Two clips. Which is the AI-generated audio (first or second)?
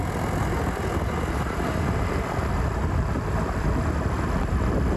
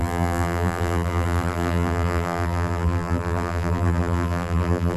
second